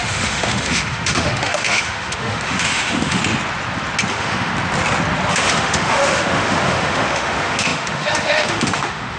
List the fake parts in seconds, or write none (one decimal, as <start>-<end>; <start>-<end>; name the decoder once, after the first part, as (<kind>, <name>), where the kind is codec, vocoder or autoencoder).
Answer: 0.0-3.2 (autoencoder, DAC-VAE); 4.1-4.5; 5.3-9.2